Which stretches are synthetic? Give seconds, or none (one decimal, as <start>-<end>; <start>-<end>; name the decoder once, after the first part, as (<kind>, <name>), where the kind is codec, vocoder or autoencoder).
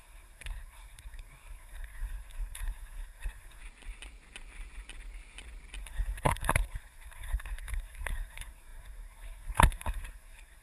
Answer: 0.0-3.6 (codec, SNAC); 5.8-10.6